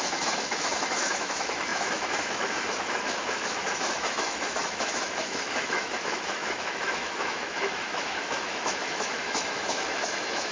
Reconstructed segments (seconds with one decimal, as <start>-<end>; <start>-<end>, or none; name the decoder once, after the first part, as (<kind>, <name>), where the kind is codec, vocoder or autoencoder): 0.0-10.5 (autoencoder, DAC-VAE)